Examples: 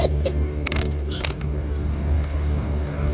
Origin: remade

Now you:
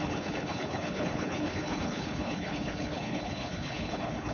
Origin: remade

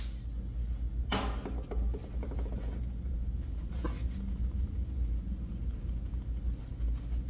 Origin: recorded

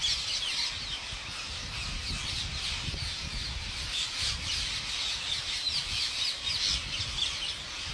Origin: recorded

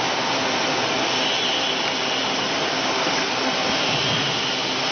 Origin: recorded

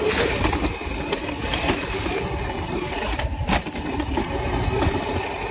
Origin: recorded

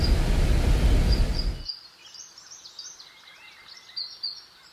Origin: recorded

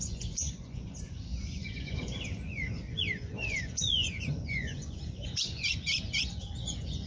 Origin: remade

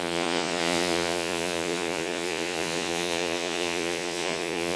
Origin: remade